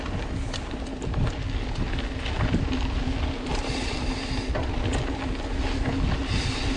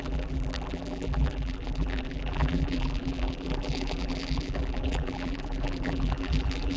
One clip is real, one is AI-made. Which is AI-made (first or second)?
second